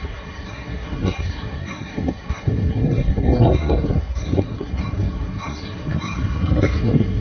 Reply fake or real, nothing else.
fake